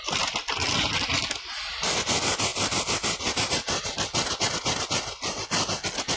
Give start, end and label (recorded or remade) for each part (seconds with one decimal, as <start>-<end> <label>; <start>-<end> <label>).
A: 0.0-6.2 recorded

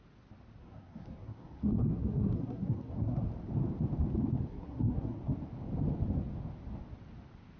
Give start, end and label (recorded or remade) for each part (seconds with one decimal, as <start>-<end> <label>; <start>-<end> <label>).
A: 0.0-0.6 recorded; 0.6-3.3 remade; 3.3-4.5 recorded; 4.5-5.2 remade; 5.2-7.6 recorded